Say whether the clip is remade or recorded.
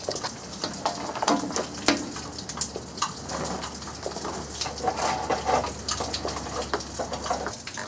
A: recorded